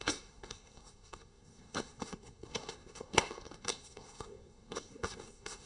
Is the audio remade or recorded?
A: remade